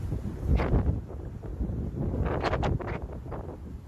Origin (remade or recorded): recorded